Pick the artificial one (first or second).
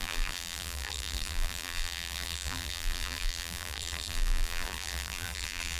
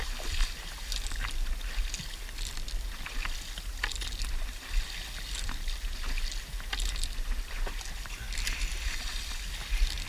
first